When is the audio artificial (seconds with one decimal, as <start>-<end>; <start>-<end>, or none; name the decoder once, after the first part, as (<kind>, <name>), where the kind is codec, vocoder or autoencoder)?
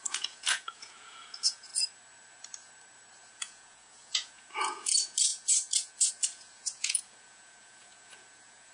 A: 0.0-1.7 (vocoder, Vocos); 3.3-8.7